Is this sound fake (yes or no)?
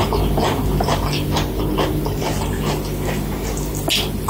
no